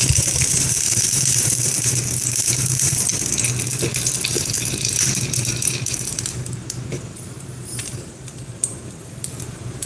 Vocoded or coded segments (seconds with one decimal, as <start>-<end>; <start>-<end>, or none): 0.0-3.1; 5.9-9.9